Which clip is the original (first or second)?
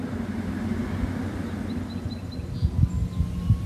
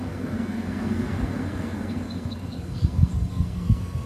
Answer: first